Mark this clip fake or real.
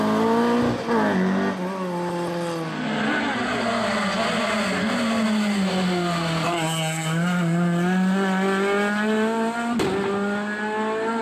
real